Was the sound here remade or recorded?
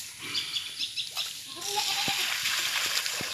recorded